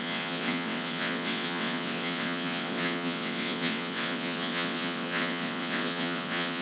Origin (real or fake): fake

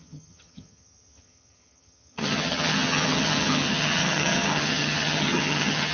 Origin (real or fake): fake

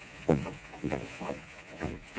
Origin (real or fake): fake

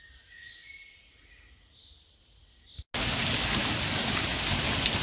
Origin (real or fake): real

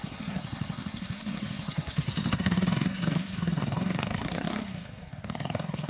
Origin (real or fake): fake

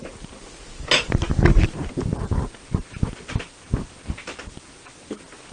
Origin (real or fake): real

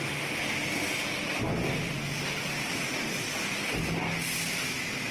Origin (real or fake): real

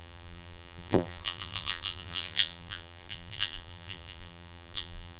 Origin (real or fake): fake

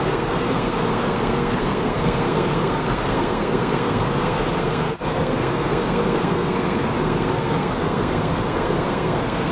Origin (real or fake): fake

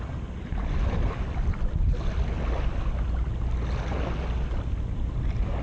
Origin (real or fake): real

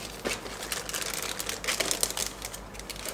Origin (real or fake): real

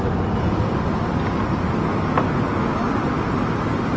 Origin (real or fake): real